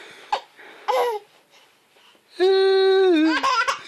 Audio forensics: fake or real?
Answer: real